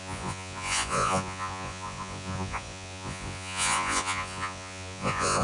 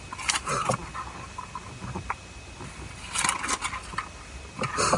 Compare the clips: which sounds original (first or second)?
second